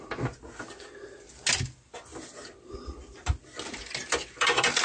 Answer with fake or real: real